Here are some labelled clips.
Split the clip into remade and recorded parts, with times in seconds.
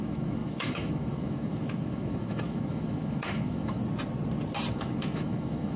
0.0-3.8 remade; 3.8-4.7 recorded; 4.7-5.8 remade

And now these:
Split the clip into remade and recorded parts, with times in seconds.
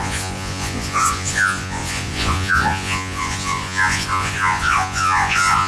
0.0-5.7 remade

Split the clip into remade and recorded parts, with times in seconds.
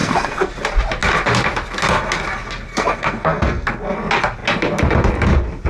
0.0-0.5 remade; 0.5-2.7 recorded; 2.7-3.7 remade; 3.7-5.7 recorded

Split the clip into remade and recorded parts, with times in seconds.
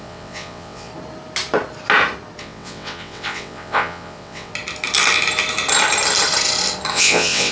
0.0-0.9 remade; 0.9-2.4 recorded; 2.4-4.5 remade; 4.5-6.9 recorded; 6.9-7.5 remade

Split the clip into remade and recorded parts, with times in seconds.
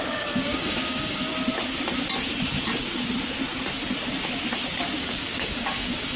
0.0-1.3 remade; 1.3-5.0 recorded; 5.0-6.2 remade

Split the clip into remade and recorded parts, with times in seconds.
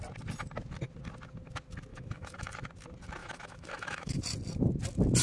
0.0-1.9 recorded; 1.9-2.5 remade; 2.5-3.2 recorded; 3.2-4.2 remade; 4.2-5.2 recorded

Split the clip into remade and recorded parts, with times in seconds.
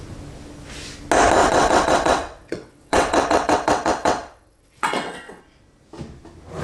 0.0-1.4 recorded; 1.4-5.4 remade; 5.4-6.6 recorded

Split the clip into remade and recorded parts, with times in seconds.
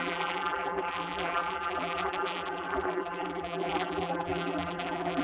0.0-5.2 remade